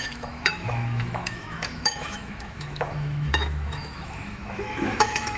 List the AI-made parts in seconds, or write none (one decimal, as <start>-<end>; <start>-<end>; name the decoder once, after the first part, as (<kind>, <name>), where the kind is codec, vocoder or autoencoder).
0.0-5.4 (autoencoder, DAC-VAE)